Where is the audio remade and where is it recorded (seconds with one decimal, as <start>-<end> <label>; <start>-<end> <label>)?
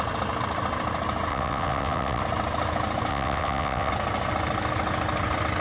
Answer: 0.0-1.3 recorded; 1.3-2.2 remade; 2.2-3.1 recorded; 3.1-3.9 remade; 3.9-5.6 recorded